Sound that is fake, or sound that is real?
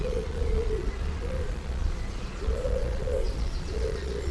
fake